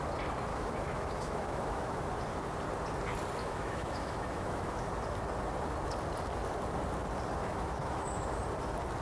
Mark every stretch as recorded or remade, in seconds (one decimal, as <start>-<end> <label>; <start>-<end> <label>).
0.0-0.5 recorded; 0.5-2.0 remade; 2.0-3.4 recorded; 3.4-4.8 remade; 4.8-7.4 recorded; 7.4-8.4 remade; 8.4-9.0 recorded